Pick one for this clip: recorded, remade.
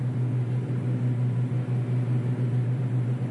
recorded